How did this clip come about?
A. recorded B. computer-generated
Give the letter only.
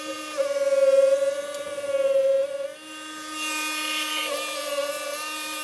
A